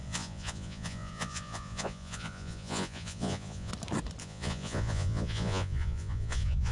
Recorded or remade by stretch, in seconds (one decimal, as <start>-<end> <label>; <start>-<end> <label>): 0.0-3.7 remade; 3.7-4.2 recorded; 4.2-6.7 remade